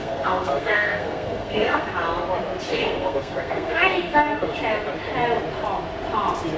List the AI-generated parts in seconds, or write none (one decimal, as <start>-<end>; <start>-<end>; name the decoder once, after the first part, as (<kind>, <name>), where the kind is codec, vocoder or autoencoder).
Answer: 0.0-1.9 (codec, SNAC); 2.7-4.5